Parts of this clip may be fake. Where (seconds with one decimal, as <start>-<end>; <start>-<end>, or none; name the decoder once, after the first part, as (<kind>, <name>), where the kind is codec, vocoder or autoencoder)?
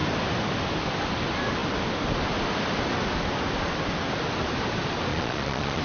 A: 5.1-5.8 (vocoder, Vocos)